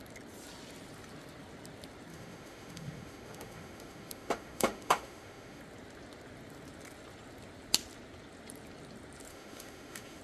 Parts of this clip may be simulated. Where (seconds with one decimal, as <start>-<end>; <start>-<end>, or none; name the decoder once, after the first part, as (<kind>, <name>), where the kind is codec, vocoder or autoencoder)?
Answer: 2.1-5.6 (autoencoder, DAC-VAE); 9.3-10.2